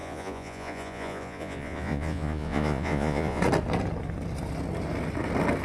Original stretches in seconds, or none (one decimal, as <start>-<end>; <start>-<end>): 3.4-5.6